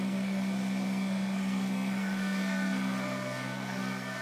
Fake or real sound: fake